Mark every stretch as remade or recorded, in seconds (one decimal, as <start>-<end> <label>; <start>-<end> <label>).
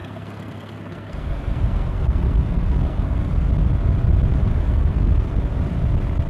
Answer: 0.0-3.5 remade; 3.5-4.3 recorded; 4.3-5.4 remade; 5.4-6.3 recorded